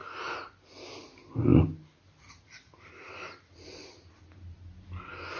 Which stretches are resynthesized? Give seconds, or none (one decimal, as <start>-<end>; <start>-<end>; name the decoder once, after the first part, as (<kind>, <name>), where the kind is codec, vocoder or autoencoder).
none